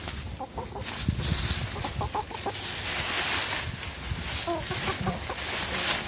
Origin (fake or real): real